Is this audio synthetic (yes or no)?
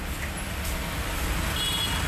no